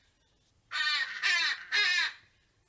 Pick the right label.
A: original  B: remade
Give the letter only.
A